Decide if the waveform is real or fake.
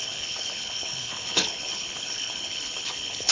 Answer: fake